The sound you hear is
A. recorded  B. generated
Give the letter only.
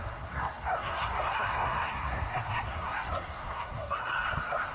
B